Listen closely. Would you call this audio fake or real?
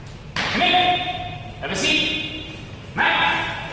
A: real